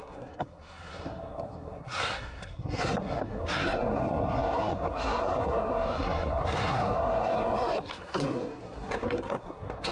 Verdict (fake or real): fake